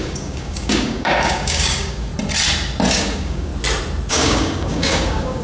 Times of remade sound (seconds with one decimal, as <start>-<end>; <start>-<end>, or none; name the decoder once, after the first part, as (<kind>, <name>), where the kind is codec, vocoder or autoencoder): 0.0-2.1 (codec, DAC); 2.9-3.5; 4.1-5.4